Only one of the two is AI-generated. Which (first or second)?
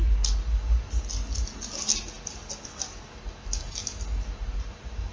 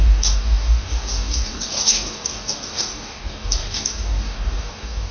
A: second